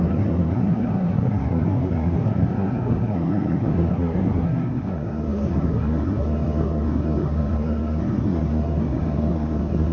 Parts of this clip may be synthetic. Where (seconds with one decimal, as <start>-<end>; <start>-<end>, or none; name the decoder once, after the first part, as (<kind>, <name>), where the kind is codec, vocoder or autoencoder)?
0.0-9.9 (codec, SNAC)